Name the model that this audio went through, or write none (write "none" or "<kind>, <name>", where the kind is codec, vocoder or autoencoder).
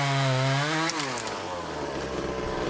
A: none